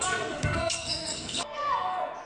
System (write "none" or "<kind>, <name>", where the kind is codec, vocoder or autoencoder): codec, SNAC